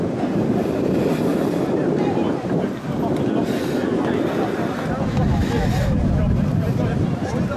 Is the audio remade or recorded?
recorded